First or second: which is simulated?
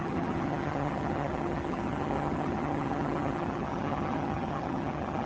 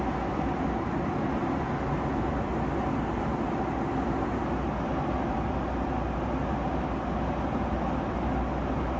first